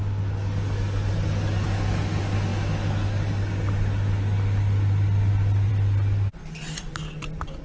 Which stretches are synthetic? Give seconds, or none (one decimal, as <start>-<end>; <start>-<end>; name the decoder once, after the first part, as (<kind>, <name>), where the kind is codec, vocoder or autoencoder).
none